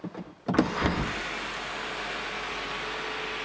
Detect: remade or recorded recorded